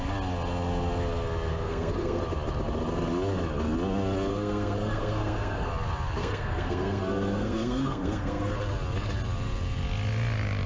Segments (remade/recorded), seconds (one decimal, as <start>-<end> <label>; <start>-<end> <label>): 0.0-1.5 recorded; 1.5-2.2 remade; 2.2-4.3 recorded; 4.3-5.7 remade; 5.7-6.2 recorded; 6.2-8.5 remade; 8.5-10.7 recorded